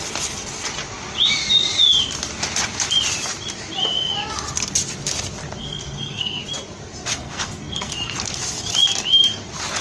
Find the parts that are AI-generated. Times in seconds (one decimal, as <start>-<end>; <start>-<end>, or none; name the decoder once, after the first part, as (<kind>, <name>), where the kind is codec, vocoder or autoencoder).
5.6-6.4 (codec, SNAC); 7.1-8.4